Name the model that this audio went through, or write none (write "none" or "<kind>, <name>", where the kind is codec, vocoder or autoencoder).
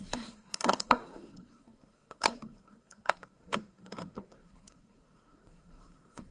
codec, SNAC